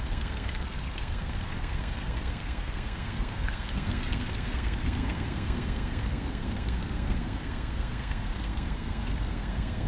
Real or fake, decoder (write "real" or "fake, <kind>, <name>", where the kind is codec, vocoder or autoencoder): fake, codec, SNAC